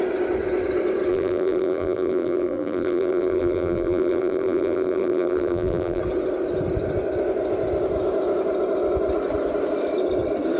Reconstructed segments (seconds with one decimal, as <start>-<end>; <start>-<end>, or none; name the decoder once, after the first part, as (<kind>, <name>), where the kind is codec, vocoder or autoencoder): 1.1-6.0 (vocoder, BigVGAN v2)